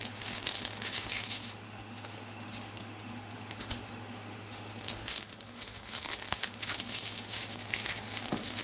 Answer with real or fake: fake